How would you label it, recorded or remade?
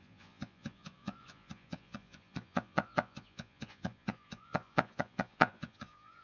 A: remade